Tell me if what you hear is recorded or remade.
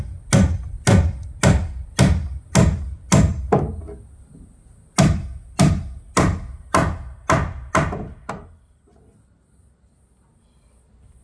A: recorded